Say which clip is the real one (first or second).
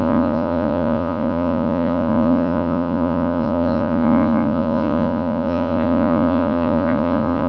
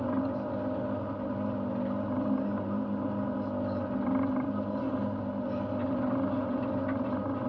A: second